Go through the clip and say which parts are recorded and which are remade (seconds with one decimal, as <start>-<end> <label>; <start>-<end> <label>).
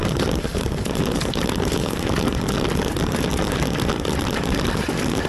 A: 0.0-5.3 recorded